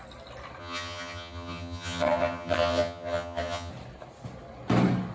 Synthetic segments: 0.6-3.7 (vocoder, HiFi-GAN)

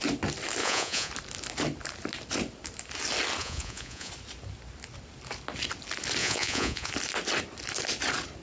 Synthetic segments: 0.6-1.1 (vocoder, Vocos); 3.4-4.1; 6.2-6.9

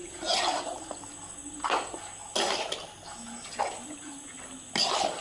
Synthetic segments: 0.0-0.5 (vocoder, BigVGAN v2); 3.6-4.3

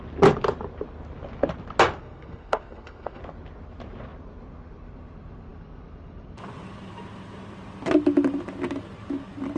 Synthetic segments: 2.0-3.2 (codec, SNAC)

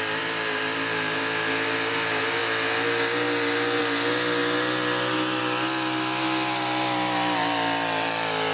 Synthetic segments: none

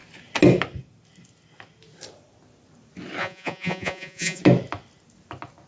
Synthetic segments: 3.2-4.4 (vocoder, Vocos)

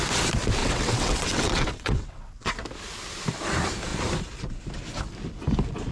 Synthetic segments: 0.6-2.5 (vocoder, WaveNeXt)

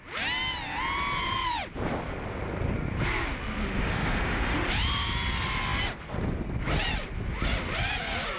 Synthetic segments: 3.6-4.7 (autoencoder, DAC-VAE)